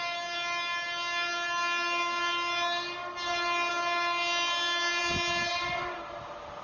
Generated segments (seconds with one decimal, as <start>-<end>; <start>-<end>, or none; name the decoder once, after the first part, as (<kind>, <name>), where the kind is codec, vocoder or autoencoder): none